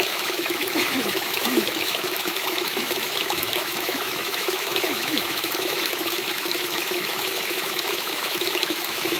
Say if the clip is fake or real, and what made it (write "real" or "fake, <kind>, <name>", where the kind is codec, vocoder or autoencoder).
fake, autoencoder, DAC-VAE